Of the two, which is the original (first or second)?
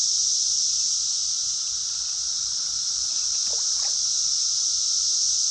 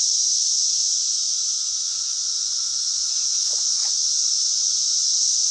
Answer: first